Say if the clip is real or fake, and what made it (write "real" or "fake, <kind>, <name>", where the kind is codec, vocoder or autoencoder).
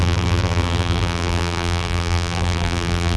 fake, vocoder, BigVGAN v2